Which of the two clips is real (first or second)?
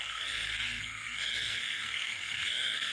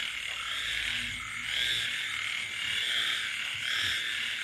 second